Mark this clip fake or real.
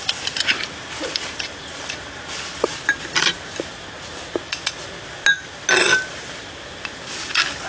real